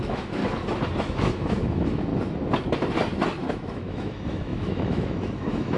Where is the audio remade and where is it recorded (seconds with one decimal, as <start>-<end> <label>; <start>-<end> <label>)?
0.0-0.4 remade; 0.4-1.0 recorded; 1.0-2.1 remade; 2.1-3.5 recorded; 3.5-5.8 remade